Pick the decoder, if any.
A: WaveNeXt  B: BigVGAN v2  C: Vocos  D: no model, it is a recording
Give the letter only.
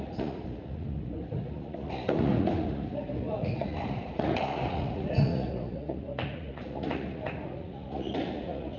C